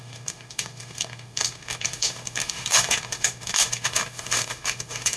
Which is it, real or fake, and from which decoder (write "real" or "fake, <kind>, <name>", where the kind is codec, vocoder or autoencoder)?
fake, autoencoder, DAC-VAE